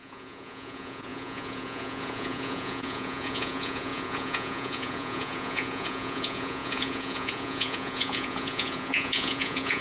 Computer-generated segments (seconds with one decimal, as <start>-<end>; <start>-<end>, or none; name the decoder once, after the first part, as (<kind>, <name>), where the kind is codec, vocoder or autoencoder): 0.0-9.8 (vocoder, Vocos)